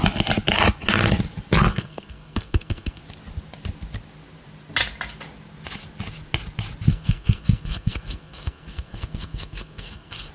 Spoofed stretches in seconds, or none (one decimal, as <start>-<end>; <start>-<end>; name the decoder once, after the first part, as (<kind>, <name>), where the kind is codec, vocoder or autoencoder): 1.7-3.0 (codec, SNAC); 6.9-10.3